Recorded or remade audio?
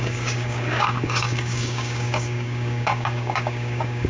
remade